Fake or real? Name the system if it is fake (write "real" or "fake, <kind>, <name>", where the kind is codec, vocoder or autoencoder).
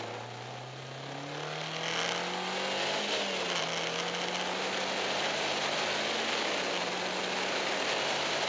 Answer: real